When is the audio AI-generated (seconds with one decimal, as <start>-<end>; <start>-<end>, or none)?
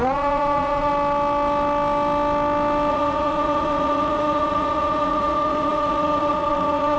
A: 0.0-0.9; 2.9-7.0